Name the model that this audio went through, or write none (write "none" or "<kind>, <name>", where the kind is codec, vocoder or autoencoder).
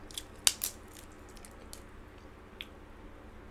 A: none